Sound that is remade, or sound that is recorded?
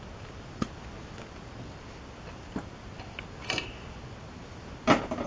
recorded